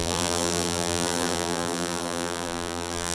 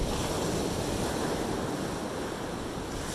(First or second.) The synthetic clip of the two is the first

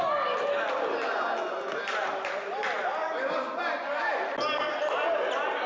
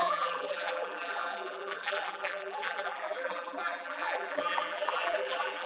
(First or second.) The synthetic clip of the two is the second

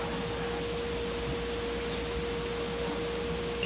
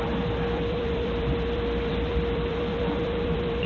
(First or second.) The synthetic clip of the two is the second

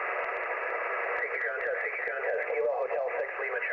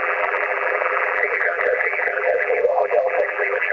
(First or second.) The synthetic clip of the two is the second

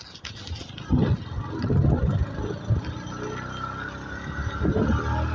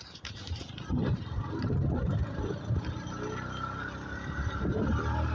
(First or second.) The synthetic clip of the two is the second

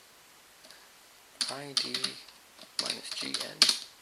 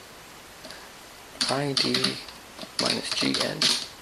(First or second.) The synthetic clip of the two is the second